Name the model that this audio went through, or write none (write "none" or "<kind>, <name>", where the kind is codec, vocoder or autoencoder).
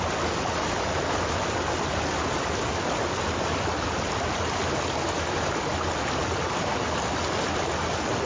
none